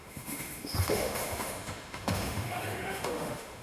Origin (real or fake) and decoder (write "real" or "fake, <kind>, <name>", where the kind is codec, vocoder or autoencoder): fake, autoencoder, DAC-VAE